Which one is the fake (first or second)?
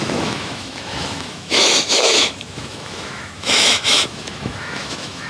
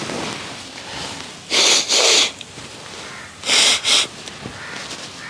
first